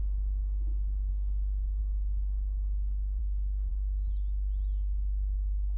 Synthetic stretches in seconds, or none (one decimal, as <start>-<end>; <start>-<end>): 1.1-1.8; 3.2-3.7